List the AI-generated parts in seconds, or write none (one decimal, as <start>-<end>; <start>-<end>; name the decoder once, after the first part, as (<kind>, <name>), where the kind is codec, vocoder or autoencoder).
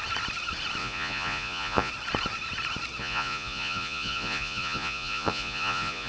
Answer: 0.8-1.9 (vocoder, Vocos); 3.0-6.1